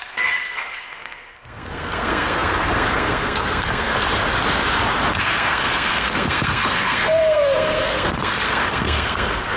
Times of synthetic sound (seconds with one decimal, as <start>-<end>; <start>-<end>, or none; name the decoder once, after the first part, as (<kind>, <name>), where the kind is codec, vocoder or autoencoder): 0.0-3.9 (codec, SNAC); 5.2-9.6